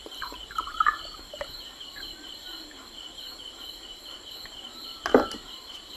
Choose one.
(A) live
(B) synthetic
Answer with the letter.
B